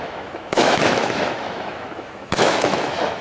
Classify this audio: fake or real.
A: fake